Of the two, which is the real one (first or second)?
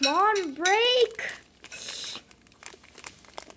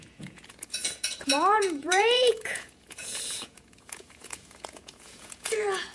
first